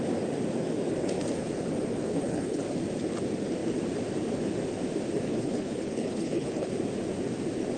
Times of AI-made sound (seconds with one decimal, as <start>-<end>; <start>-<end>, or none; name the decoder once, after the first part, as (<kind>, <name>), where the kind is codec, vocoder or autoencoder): 2.1-2.6 (codec, HILCodec); 5.3-6.7